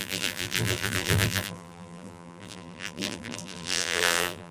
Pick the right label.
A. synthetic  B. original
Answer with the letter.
A